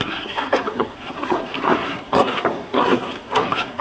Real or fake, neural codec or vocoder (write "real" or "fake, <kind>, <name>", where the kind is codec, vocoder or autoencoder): fake, codec, SNAC